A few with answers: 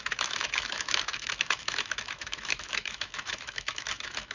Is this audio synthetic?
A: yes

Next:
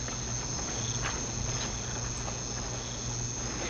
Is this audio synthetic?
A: no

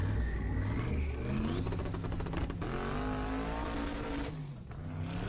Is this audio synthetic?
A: no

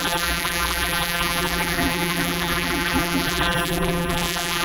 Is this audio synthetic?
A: yes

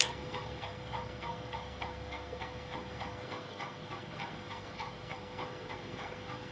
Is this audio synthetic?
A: yes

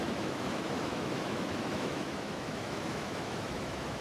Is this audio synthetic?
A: yes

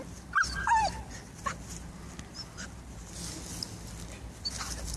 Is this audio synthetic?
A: no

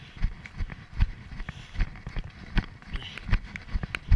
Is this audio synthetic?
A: no